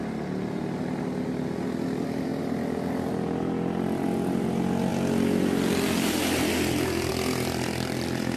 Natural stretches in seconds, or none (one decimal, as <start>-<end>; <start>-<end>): 0.0-8.4